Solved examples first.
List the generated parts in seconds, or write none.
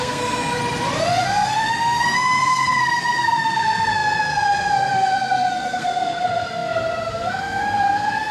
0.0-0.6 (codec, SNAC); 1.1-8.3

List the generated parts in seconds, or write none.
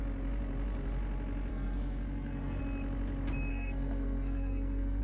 1.5-2.6 (codec, SNAC); 3.5-5.0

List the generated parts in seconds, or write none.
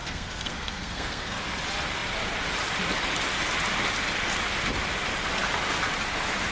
0.0-1.4 (codec, SNAC)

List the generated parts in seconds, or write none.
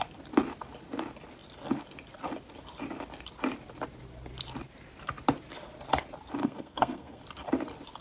6.4-7.2 (codec, SNAC)